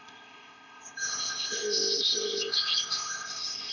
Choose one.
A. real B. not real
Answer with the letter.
B